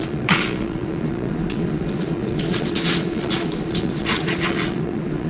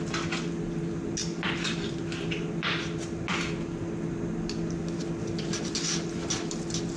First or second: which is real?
second